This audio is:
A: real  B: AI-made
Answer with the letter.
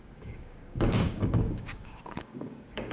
B